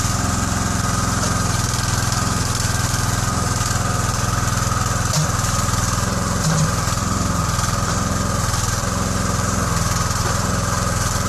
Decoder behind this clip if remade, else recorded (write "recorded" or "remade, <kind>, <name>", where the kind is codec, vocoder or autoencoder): remade, vocoder, BigVGAN v2